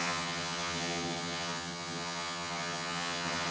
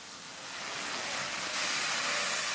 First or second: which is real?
second